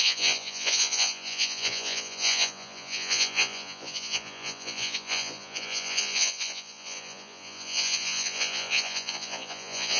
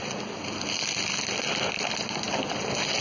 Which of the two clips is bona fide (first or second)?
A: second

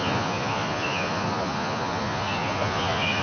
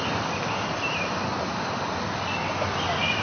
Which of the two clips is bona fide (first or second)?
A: second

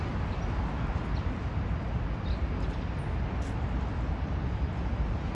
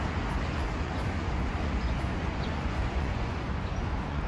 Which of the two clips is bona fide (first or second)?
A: first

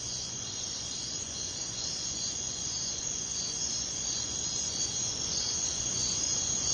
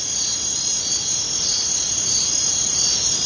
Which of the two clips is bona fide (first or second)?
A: second